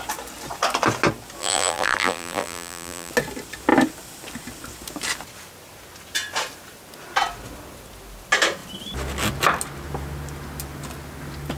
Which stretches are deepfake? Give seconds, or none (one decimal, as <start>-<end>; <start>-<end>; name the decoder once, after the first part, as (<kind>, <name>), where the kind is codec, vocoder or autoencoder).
1.4-3.1 (vocoder, BigVGAN v2)